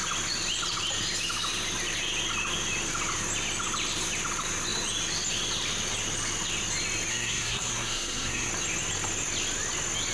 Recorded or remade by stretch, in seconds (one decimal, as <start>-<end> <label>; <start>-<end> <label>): 0.0-7.1 recorded; 7.1-8.5 remade; 8.5-10.1 recorded